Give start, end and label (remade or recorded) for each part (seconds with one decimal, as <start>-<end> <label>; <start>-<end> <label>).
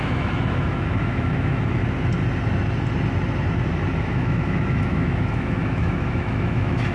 0.0-1.8 remade; 1.8-4.0 recorded; 4.0-6.9 remade